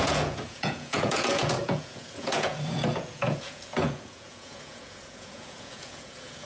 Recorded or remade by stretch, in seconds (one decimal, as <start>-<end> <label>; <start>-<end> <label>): 0.0-6.5 remade